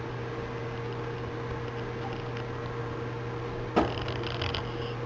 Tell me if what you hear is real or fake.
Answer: real